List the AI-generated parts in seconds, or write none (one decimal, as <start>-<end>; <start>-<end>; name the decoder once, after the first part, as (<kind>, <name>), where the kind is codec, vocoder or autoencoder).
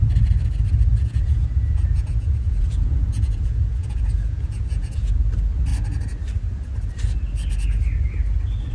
0.9-5.2 (vocoder, Vocos)